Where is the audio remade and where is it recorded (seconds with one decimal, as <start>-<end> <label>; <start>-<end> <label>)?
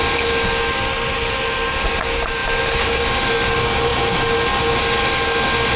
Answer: 0.0-5.8 recorded